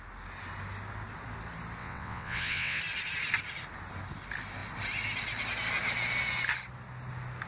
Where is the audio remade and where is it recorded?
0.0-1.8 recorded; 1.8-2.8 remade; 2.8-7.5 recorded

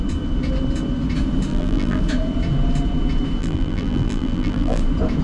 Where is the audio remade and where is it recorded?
0.0-1.5 recorded; 1.5-2.0 remade; 2.0-3.4 recorded; 3.4-4.8 remade; 4.8-5.2 recorded

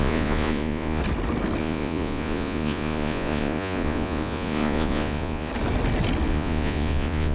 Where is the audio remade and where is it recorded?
0.0-1.0 remade; 1.0-1.6 recorded; 1.6-5.5 remade; 5.5-6.3 recorded; 6.3-7.3 remade

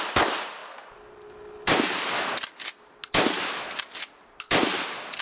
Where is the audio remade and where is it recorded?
0.0-5.2 recorded

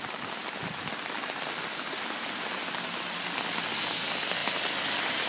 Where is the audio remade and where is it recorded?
0.0-5.3 recorded

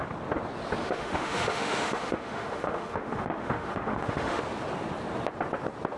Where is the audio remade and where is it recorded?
0.0-0.8 recorded; 0.8-4.4 remade; 4.4-6.0 recorded